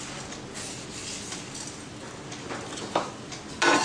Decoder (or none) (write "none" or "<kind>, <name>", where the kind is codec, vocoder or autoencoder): none